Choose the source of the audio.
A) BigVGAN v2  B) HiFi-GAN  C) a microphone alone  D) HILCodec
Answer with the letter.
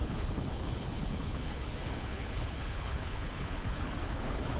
D